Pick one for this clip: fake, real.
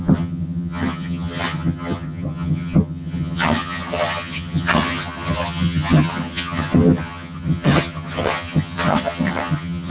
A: fake